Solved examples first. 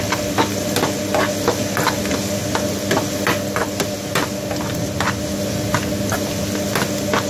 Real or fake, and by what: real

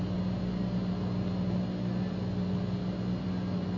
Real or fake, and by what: real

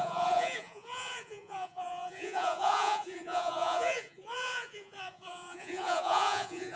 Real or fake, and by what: fake, vocoder, Vocos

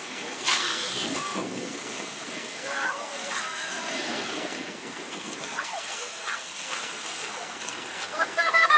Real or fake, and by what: fake, codec, SNAC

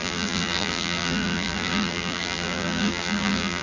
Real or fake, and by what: fake, vocoder, BigVGAN v2